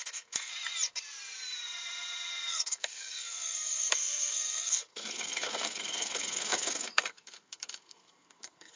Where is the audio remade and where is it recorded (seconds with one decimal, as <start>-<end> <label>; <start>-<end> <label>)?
0.0-0.5 remade; 0.5-2.5 recorded; 2.5-8.8 remade